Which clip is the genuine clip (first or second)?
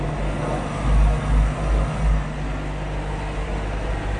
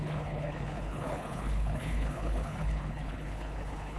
first